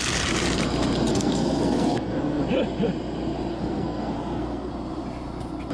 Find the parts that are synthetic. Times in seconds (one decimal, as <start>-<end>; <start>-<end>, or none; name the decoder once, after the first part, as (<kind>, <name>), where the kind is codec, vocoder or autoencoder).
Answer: 1.1-2.4 (codec, SNAC); 3.5-4.7